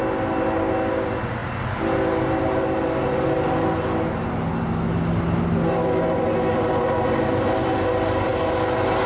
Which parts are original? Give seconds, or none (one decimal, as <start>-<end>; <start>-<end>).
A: 0.0-9.1